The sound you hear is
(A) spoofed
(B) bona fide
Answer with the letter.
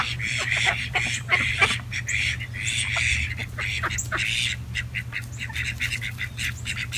B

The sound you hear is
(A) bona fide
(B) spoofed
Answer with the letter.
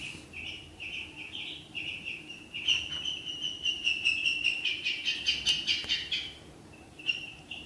B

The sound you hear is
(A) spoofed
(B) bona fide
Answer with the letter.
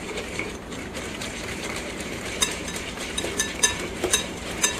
A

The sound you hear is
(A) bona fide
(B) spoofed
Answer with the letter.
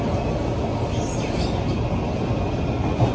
A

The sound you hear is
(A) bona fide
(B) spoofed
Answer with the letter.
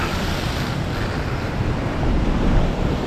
B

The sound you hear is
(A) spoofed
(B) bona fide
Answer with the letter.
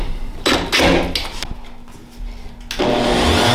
B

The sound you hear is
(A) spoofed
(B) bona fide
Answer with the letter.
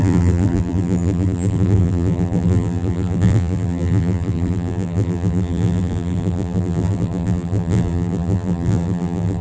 A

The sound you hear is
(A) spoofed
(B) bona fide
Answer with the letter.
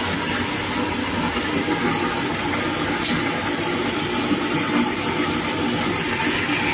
B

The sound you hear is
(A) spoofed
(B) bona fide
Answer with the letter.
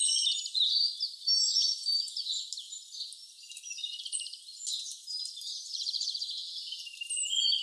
B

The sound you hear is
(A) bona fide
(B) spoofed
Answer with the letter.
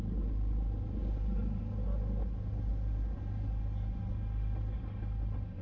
A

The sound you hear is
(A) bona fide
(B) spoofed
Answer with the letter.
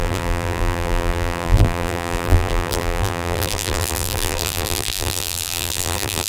B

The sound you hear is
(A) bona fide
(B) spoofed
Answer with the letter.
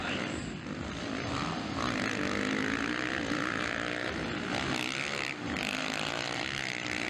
B